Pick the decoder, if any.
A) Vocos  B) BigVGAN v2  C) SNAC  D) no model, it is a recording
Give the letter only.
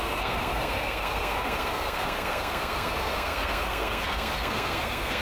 C